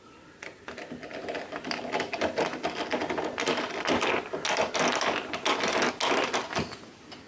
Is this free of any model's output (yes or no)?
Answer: yes